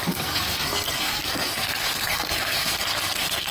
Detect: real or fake fake